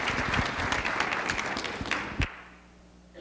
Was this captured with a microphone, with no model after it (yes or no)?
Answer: yes